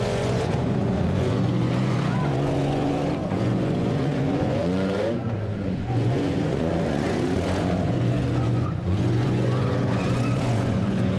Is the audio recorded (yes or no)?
no